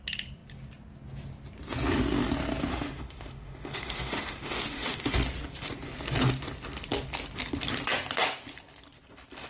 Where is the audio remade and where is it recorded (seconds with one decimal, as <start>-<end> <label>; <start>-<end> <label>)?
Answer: 0.0-2.7 recorded; 2.7-5.1 remade; 5.1-9.5 recorded